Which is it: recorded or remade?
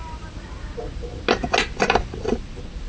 recorded